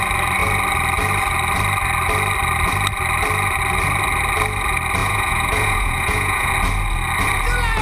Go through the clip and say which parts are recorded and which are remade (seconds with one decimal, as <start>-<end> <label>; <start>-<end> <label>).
0.0-5.0 recorded; 5.0-6.5 remade; 6.5-7.8 recorded